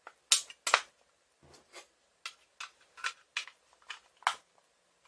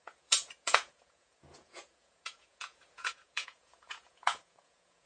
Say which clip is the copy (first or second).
second